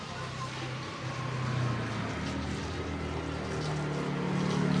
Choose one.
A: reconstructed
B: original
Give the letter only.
B